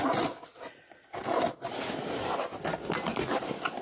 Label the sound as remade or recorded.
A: recorded